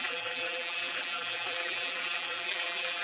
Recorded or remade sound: remade